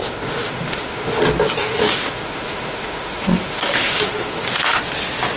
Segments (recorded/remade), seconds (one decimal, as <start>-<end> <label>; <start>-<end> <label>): 0.0-1.2 remade; 1.2-1.6 recorded; 1.6-4.8 remade; 4.8-5.4 recorded